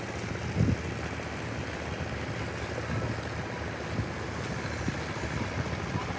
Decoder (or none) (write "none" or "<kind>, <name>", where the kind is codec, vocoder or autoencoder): none